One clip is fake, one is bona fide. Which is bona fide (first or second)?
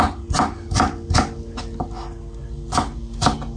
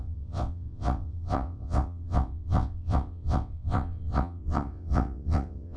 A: first